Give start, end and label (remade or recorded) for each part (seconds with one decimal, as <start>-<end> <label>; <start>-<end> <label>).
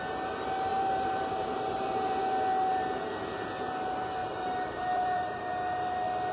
0.0-0.7 recorded; 0.7-2.2 remade; 2.2-4.2 recorded; 4.2-5.4 remade; 5.4-6.3 recorded